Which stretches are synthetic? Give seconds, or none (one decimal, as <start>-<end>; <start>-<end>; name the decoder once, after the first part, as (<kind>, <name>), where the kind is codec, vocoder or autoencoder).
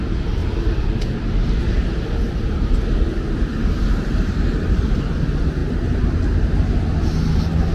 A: 1.4-5.0 (vocoder, BigVGAN v2)